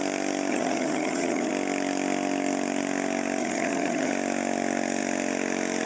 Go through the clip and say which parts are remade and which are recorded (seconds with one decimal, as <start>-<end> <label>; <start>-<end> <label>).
0.0-0.5 recorded; 0.5-1.5 remade; 1.5-3.4 recorded; 3.4-4.1 remade; 4.1-5.8 recorded